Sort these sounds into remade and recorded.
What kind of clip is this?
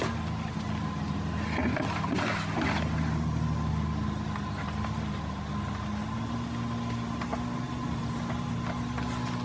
recorded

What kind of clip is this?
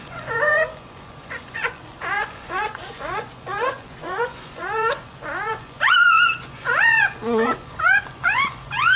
remade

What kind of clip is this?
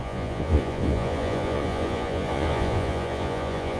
remade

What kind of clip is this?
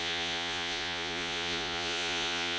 remade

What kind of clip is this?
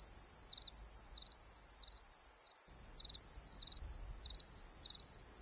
recorded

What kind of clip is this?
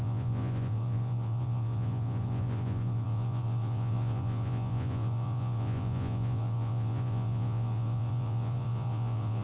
remade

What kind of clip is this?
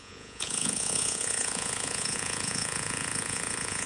remade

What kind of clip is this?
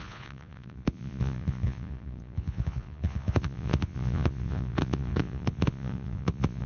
remade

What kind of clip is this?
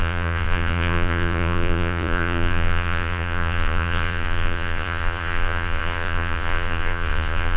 remade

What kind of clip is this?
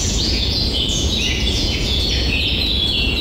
remade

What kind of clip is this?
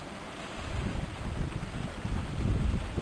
recorded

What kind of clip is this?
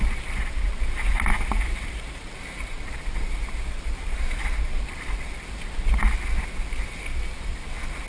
recorded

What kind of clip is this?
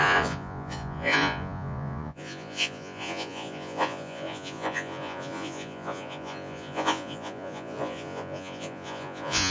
remade